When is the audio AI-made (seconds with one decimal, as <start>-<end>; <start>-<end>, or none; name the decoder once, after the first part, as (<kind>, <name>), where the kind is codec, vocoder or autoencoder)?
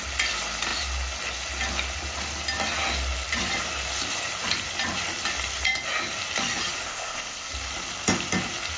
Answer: 6.9-7.5 (codec, ZipCodec)